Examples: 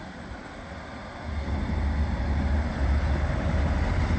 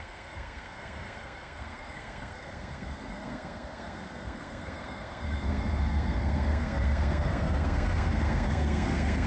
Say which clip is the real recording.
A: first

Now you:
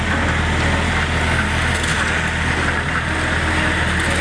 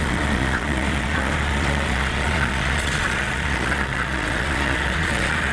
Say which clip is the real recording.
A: first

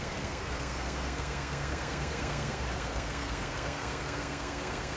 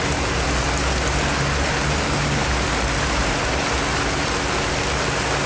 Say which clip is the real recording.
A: second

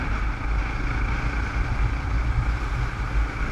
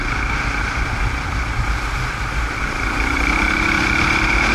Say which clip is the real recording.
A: first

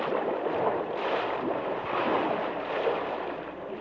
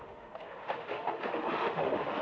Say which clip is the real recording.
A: first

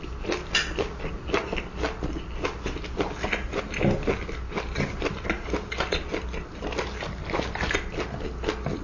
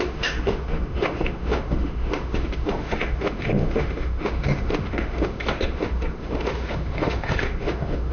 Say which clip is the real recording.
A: first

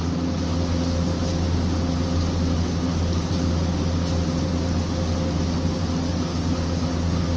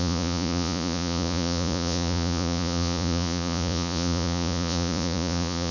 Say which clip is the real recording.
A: first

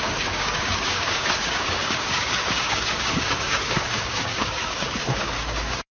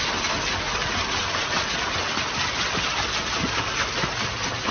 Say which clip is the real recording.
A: second